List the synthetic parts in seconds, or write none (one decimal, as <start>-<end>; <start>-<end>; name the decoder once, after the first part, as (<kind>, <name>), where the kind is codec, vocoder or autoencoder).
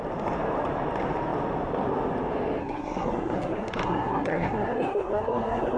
2.6-5.8 (codec, SNAC)